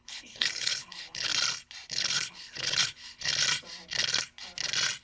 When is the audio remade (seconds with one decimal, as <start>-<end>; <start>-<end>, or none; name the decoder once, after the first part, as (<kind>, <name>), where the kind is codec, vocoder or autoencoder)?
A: 0.0-1.3 (codec, HILCodec); 1.9-3.3